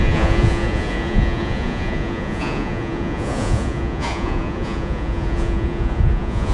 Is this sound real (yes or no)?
no